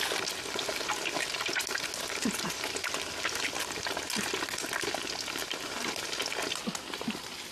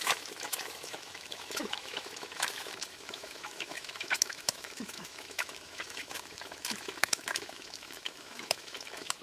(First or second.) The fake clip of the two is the second